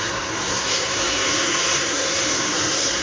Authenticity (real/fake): fake